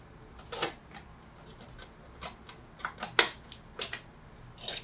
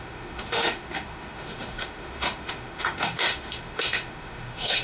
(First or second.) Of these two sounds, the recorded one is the first